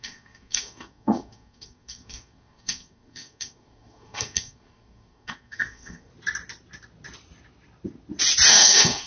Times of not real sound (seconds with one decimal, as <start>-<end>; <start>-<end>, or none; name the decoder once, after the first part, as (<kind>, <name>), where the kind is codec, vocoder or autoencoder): 0.0-6.1 (codec, SNAC); 8.5-9.1